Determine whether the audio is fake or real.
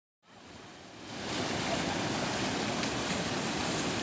fake